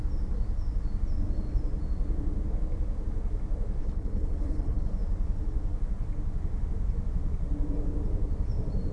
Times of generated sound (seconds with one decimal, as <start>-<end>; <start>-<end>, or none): 3.8-4.9